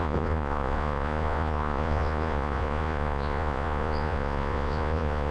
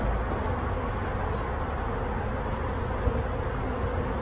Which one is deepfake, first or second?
first